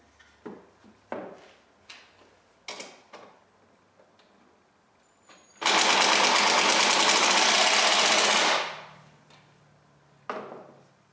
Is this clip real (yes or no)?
yes